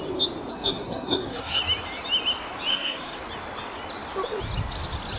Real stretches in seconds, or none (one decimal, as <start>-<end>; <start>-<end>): 0.0-0.5; 1.6-2.7; 3.2-5.2